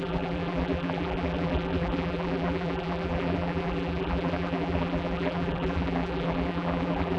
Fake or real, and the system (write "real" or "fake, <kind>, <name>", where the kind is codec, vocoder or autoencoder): fake, vocoder, BigVGAN v2